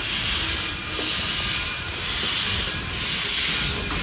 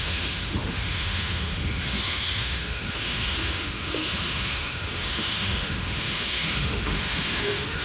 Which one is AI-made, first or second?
second